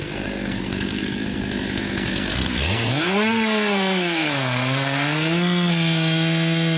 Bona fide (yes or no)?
no